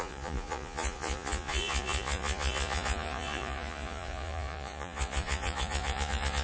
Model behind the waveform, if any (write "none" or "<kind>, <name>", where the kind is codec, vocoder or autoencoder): vocoder, Vocos